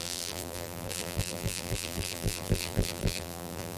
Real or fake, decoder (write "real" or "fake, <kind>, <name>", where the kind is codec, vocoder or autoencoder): fake, vocoder, BigVGAN v2